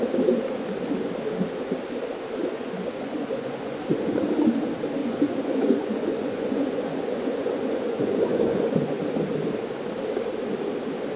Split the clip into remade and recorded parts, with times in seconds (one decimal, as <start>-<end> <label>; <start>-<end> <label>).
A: 0.0-2.4 recorded; 2.4-3.8 remade; 3.8-5.0 recorded; 5.0-9.0 remade; 9.0-11.2 recorded